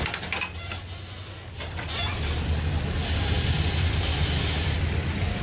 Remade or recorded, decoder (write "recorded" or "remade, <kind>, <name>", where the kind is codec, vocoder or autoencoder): recorded